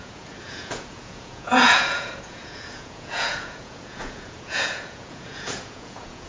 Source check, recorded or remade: remade